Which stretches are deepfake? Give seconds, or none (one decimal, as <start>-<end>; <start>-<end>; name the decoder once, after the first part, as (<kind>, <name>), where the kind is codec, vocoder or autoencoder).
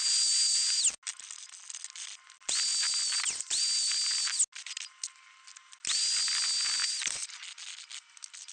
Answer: none